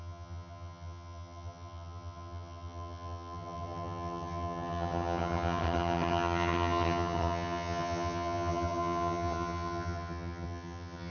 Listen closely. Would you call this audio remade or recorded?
remade